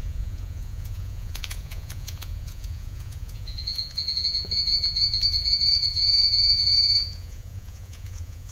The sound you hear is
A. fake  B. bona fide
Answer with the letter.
A